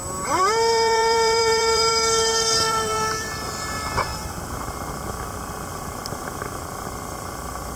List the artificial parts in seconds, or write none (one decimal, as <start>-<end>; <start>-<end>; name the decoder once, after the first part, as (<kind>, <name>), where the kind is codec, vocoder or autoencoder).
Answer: 0.0-1.9 (vocoder, BigVGAN v2); 2.6-4.1; 5.7-7.8